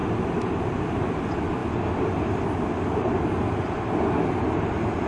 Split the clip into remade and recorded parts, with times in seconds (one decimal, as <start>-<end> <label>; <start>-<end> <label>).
0.0-5.1 recorded